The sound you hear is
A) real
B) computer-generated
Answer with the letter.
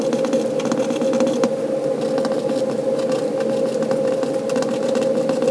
A